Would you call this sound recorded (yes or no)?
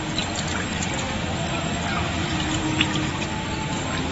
no